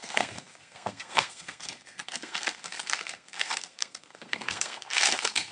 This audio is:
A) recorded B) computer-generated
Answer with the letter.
B